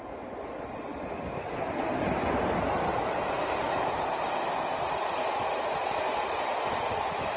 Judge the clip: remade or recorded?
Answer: recorded